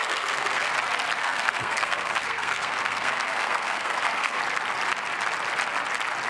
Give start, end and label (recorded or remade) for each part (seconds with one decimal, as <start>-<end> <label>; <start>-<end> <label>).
0.0-0.7 remade; 0.7-1.2 recorded; 1.2-4.4 remade; 4.4-6.3 recorded